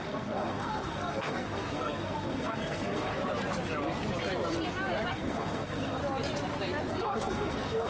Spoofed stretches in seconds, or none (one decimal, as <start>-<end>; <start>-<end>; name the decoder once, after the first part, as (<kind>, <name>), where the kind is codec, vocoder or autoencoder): 0.0-3.2 (codec, SNAC); 5.1-6.0; 6.9-7.9